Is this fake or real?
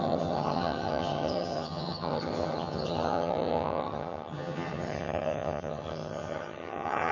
fake